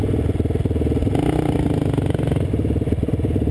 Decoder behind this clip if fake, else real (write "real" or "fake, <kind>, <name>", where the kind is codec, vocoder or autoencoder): real